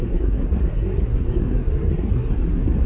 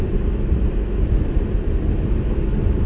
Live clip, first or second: second